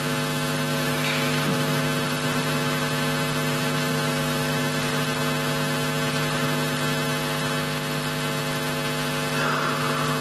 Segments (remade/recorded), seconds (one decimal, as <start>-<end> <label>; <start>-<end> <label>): 0.0-0.7 recorded; 0.7-1.8 remade; 1.8-3.9 recorded; 3.9-4.6 remade; 4.6-10.2 recorded